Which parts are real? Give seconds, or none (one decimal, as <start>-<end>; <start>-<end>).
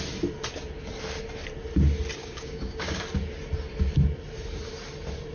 0.0-2.2; 3.0-5.3